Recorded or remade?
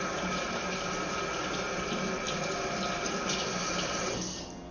recorded